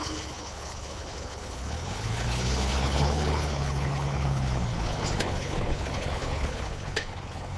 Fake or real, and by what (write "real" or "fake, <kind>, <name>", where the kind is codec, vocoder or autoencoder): fake, codec, HILCodec